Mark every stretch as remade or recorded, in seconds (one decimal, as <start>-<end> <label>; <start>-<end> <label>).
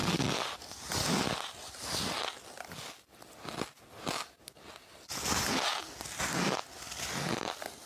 0.0-7.9 recorded